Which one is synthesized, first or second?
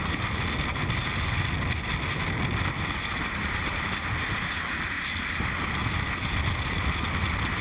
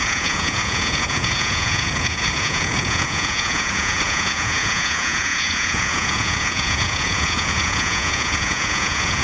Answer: second